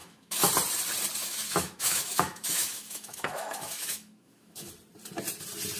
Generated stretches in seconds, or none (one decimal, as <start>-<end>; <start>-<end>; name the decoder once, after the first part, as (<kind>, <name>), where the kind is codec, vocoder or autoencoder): 0.0-0.5 (autoencoder, DAC-VAE); 1.2-4.7